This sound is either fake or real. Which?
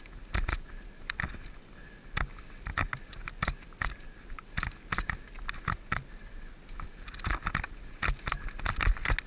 real